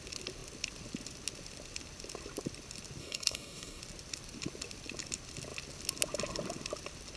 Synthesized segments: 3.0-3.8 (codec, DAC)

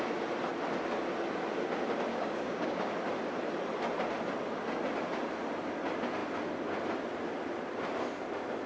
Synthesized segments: 2.1-2.9 (codec, DAC)

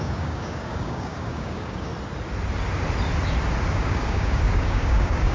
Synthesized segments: 0.0-1.9 (codec, DAC); 3.7-5.3

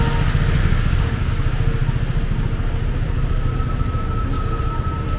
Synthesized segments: 0.6-1.3 (codec, DAC)

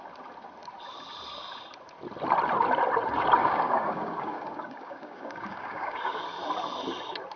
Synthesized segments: 3.4-6.2 (codec, DAC)

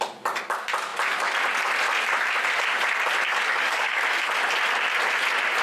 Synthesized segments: 3.3-4.0 (codec, DAC)